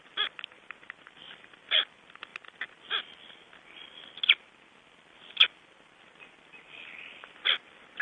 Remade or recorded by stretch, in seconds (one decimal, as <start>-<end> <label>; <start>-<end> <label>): 0.0-8.0 recorded